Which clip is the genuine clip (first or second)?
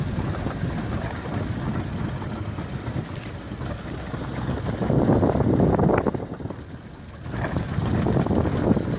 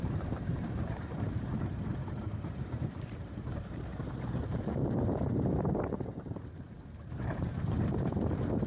first